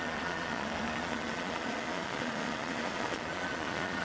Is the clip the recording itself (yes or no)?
no